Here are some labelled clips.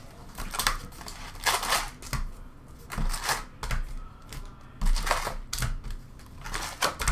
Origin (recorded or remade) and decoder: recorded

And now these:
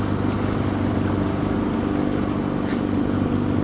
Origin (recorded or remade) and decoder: recorded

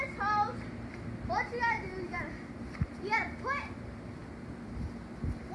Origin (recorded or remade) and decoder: recorded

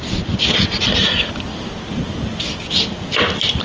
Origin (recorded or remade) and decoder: recorded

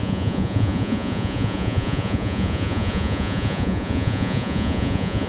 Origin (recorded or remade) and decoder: remade, vocoder, Vocos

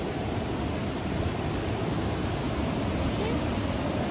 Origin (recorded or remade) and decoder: recorded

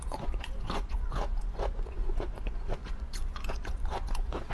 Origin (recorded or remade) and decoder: remade, vocoder, Vocos